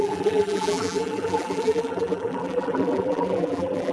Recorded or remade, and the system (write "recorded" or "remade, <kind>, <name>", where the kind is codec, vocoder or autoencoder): remade, vocoder, BigVGAN v2